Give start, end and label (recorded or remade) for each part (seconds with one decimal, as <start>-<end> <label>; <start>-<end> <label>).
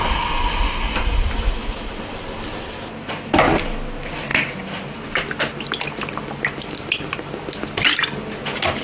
0.0-8.8 recorded